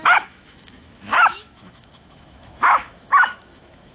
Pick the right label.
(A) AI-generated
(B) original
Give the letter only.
A